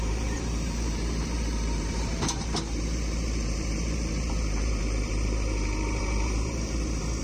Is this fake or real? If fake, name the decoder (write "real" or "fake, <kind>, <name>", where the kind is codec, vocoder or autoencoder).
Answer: fake, vocoder, BigVGAN v2